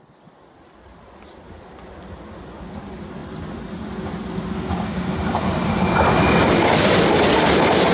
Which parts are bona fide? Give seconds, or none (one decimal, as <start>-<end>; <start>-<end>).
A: 0.0-7.9